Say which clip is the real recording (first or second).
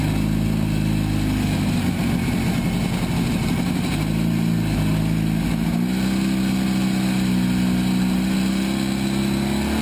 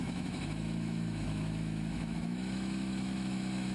first